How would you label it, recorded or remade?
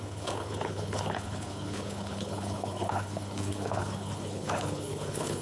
remade